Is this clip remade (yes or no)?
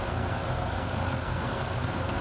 yes